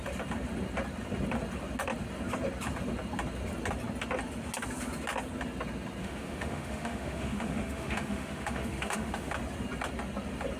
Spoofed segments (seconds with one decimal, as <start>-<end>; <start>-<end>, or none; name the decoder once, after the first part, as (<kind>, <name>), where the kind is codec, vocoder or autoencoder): 6.0-9.3 (autoencoder, DAC-VAE)